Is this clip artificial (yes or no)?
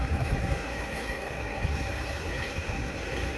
yes